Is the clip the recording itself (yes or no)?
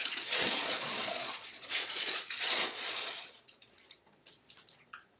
no